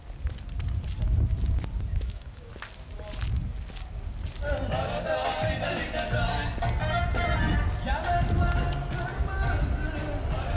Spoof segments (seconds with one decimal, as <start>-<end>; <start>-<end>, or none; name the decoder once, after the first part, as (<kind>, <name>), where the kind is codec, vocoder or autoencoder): 1.9-2.5 (autoencoder, DAC-VAE)